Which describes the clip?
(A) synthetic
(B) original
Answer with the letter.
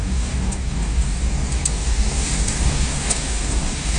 A